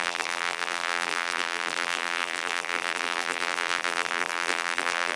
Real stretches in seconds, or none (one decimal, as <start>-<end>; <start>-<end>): none